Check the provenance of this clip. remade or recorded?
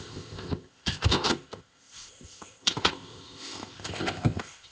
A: remade